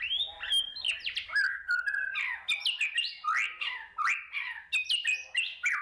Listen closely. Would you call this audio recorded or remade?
recorded